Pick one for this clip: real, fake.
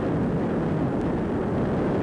real